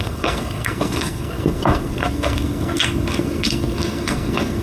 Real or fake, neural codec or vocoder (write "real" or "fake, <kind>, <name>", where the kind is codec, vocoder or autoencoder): fake, codec, SNAC